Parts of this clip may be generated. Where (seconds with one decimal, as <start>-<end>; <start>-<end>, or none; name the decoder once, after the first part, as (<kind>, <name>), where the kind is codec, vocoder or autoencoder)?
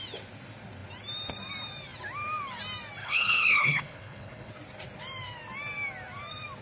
3.0-4.5 (codec, HILCodec)